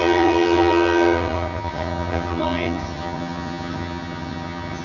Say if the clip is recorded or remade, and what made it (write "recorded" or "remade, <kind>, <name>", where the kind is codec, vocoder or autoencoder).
remade, vocoder, HiFi-GAN